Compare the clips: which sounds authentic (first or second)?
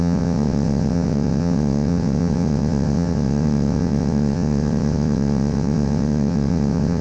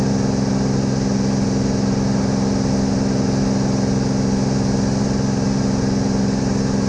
second